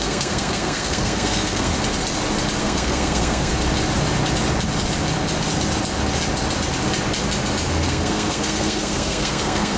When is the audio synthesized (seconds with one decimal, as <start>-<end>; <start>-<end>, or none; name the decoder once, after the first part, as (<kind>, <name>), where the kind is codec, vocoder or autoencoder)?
0.0-1.7 (codec, SNAC); 2.6-3.5; 7.7-9.8